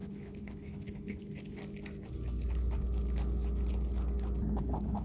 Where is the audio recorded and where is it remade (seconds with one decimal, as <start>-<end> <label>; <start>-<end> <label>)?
0.0-1.6 remade; 1.6-4.6 recorded; 4.6-5.0 remade